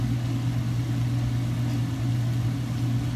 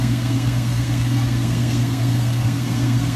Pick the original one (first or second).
first